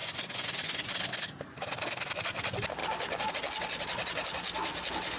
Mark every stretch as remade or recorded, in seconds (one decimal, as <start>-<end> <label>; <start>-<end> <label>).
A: 0.0-0.9 remade; 0.9-5.2 recorded